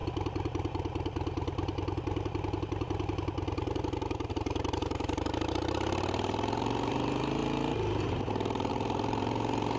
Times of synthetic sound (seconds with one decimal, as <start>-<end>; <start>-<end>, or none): 4.3-9.8